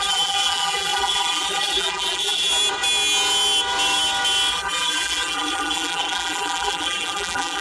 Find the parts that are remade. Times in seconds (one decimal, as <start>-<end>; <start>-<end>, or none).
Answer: 0.0-2.5; 4.5-7.6